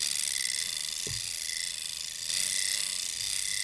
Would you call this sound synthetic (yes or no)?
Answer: no